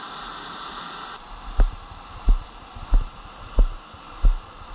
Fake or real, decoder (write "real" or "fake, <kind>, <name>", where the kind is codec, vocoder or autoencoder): real